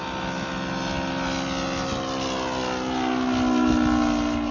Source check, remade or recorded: recorded